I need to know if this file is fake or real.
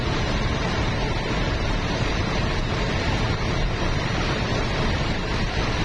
fake